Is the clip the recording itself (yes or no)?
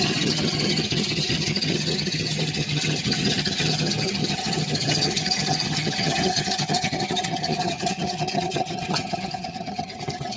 no